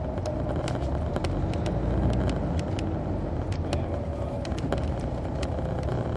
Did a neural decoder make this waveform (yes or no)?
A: no